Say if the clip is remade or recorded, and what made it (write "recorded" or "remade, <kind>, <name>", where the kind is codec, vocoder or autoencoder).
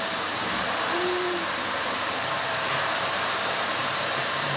remade, vocoder, BigVGAN v2